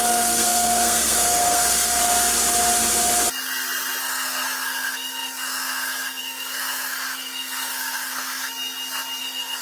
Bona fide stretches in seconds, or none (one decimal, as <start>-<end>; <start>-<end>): 2.0-4.0; 8.5-9.2